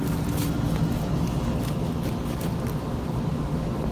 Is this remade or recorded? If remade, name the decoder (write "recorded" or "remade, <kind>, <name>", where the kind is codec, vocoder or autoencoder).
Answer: recorded